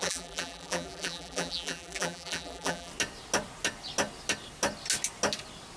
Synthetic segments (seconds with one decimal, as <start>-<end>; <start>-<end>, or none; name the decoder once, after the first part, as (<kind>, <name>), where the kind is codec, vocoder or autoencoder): 0.0-2.9 (vocoder, BigVGAN v2)